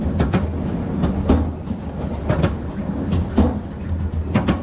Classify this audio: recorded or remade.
recorded